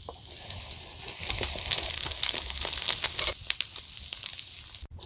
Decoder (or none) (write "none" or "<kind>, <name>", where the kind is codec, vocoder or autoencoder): none